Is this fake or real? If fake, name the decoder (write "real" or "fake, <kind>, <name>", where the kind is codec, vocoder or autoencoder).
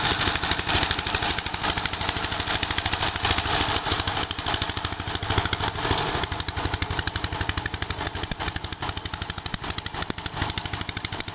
real